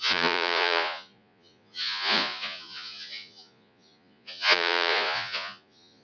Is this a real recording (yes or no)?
no